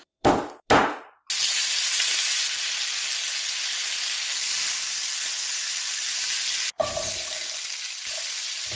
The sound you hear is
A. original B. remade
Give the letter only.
A